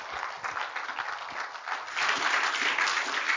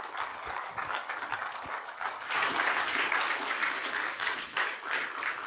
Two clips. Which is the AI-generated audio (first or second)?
second